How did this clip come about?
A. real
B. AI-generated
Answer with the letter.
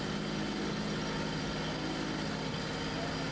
A